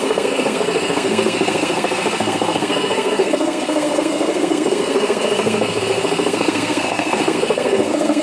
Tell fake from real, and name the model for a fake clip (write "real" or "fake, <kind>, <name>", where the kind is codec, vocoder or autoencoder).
fake, codec, SNAC